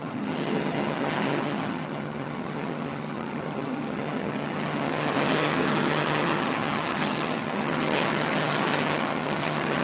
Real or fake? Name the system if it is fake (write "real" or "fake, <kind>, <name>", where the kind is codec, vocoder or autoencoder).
fake, vocoder, HiFi-GAN